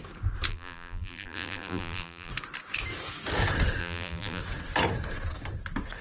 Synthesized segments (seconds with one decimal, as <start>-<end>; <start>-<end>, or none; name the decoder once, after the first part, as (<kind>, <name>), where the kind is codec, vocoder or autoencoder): 0.5-2.3 (vocoder, BigVGAN v2); 3.8-4.4